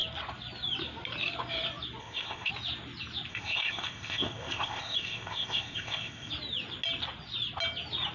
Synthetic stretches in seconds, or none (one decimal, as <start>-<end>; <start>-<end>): 2.0-2.5; 3.3-6.3